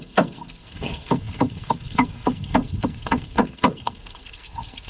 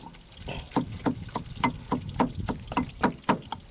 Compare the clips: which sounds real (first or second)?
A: second